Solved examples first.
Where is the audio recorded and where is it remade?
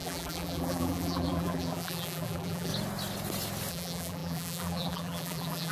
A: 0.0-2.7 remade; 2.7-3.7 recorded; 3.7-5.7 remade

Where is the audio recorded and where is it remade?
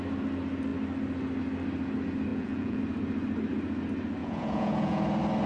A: 0.0-2.3 recorded; 2.3-2.8 remade; 2.8-4.2 recorded; 4.2-5.0 remade; 5.0-5.5 recorded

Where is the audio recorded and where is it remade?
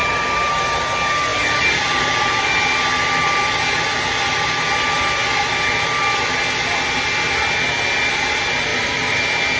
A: 0.0-0.5 remade; 0.5-8.7 recorded; 8.7-9.2 remade; 9.2-9.6 recorded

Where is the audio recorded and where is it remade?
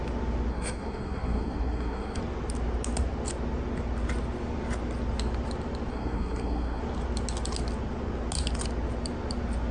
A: 0.0-0.5 recorded; 0.5-2.2 remade; 2.2-5.9 recorded; 5.9-6.8 remade; 6.8-9.7 recorded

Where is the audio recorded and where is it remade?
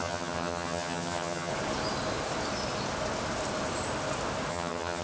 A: 0.0-1.5 remade; 1.5-4.5 recorded; 4.5-5.0 remade